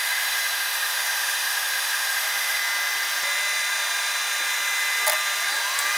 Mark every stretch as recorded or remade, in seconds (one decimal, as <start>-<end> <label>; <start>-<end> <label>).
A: 0.0-2.6 remade; 2.6-6.0 recorded